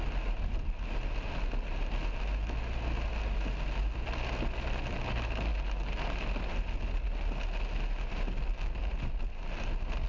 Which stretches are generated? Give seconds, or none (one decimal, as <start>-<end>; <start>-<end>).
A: none